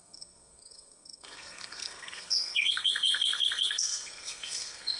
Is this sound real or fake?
fake